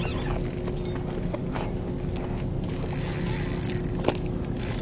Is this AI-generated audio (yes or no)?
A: no